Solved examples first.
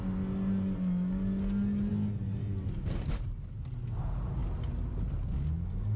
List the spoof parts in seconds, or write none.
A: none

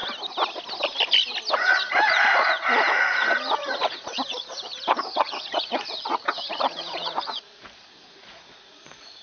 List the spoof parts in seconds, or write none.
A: 1.5-9.2 (vocoder, Vocos)

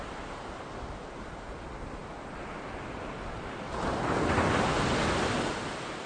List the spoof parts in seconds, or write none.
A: none

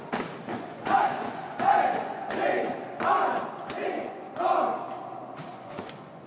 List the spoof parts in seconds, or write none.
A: 0.5-4.3 (vocoder, Vocos); 5.5-6.3

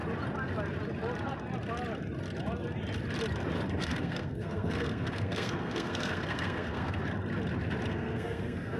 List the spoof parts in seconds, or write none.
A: 3.8-7.0 (codec, SNAC); 7.9-8.8

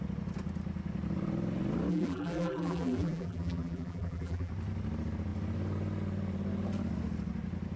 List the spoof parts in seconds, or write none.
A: 1.9-4.5 (vocoder, BigVGAN v2)

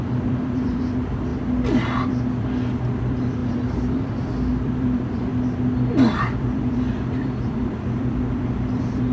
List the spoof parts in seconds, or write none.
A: 0.0-1.3 (vocoder, BigVGAN v2); 2.1-5.3; 6.2-9.1